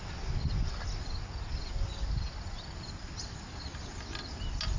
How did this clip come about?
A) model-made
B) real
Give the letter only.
B